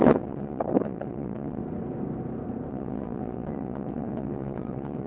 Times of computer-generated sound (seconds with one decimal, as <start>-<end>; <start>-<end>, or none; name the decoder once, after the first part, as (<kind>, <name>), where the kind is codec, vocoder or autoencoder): 0.0-1.6 (vocoder, WaveNeXt); 2.7-5.1